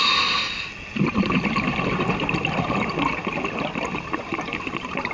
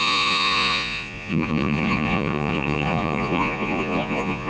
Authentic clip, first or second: first